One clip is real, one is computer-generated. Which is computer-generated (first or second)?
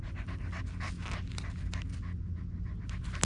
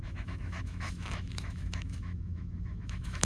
second